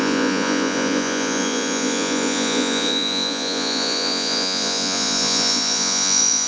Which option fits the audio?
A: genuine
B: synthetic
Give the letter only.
B